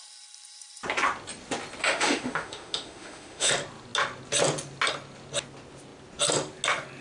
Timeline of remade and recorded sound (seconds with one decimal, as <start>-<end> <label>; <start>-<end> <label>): 0.0-1.8 recorded; 1.8-3.5 remade; 3.5-7.0 recorded